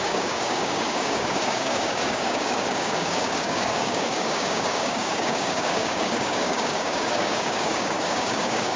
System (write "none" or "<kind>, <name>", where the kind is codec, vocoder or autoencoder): codec, DAC